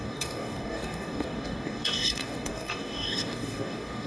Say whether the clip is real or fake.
fake